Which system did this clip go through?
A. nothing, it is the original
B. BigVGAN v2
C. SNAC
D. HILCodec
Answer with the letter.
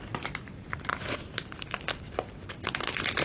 A